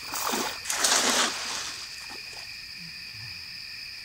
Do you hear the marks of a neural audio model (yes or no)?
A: no